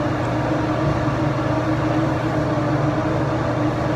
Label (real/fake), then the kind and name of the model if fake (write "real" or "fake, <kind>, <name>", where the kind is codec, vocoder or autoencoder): real